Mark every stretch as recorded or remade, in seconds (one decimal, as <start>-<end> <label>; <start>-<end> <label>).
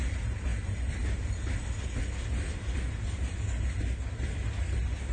0.0-5.1 recorded